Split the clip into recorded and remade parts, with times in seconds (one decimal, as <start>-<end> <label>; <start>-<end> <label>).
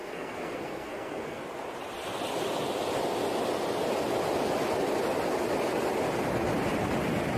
0.0-1.4 remade; 1.4-7.4 recorded